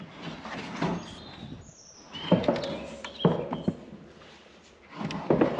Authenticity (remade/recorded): recorded